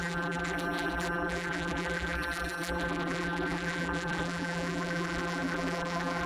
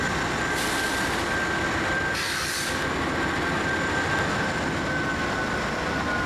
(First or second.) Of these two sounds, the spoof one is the first